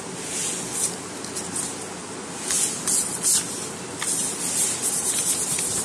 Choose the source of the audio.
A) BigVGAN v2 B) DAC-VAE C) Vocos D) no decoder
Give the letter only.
D